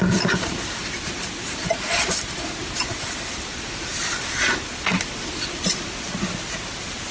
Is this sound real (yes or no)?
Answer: yes